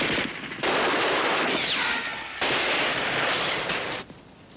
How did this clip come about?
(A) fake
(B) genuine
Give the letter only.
A